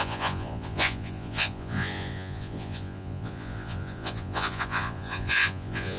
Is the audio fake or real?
fake